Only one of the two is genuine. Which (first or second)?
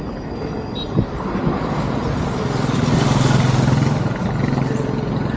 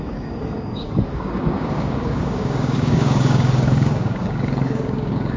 first